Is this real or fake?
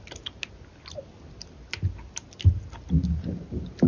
real